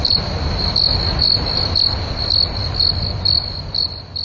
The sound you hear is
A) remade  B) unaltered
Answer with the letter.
B